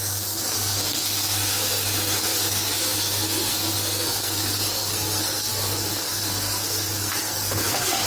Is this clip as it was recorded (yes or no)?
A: no